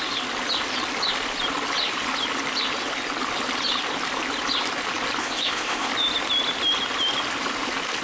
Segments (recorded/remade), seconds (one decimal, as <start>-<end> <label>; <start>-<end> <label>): 0.0-5.2 recorded; 5.2-5.9 remade; 5.9-8.0 recorded